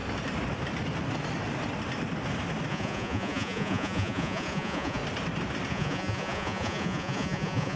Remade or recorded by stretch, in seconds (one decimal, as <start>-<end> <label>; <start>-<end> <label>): 0.0-2.7 recorded; 2.7-5.0 remade; 5.0-5.7 recorded; 5.7-7.8 remade